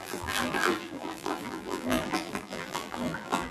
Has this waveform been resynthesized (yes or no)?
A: yes